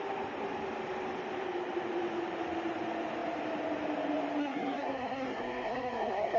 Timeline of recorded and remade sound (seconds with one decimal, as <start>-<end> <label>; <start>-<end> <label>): 0.0-4.4 recorded; 4.4-6.4 remade